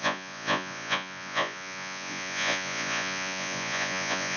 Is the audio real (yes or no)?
no